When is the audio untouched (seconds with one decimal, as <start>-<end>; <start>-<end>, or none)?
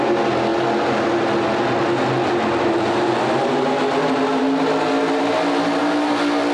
0.0-6.5